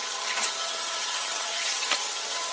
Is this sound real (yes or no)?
no